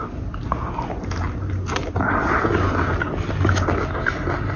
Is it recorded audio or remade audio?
recorded